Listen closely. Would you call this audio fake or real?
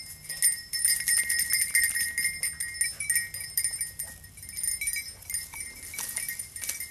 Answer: real